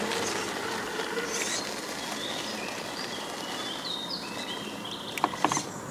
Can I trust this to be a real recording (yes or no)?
yes